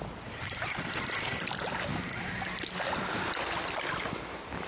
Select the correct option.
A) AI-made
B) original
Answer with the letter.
B